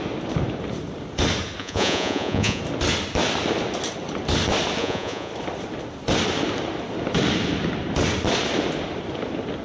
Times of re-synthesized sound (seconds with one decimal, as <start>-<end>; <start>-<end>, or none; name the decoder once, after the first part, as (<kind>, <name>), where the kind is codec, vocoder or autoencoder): 1.6-2.6 (vocoder, Vocos); 4.8-5.3